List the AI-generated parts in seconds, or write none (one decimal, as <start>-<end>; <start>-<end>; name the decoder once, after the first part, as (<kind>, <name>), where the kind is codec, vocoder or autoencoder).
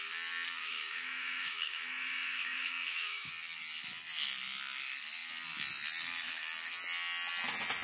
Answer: 0.6-3.3 (autoencoder, DAC-VAE)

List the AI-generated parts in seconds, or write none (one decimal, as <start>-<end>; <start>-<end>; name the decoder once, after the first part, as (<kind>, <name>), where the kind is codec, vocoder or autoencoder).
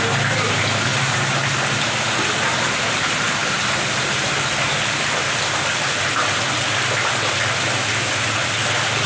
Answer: none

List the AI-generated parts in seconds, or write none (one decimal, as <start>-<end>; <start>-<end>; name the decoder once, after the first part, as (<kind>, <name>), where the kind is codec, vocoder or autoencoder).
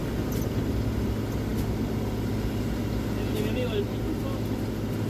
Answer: none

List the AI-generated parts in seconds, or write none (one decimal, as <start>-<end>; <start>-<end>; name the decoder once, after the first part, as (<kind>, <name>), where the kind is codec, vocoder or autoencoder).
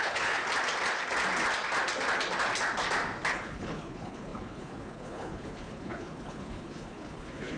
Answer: 0.0-0.4 (codec, HILCodec); 3.3-7.6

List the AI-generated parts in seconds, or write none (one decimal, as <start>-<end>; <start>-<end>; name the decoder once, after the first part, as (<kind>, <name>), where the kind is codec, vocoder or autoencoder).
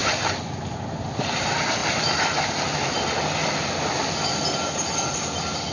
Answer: 1.8-5.2 (vocoder, BigVGAN v2)